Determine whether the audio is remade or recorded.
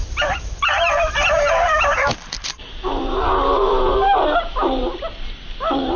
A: remade